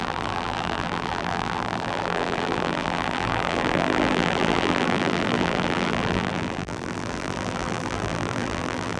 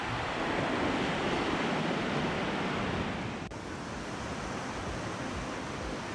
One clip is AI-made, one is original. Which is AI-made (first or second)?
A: first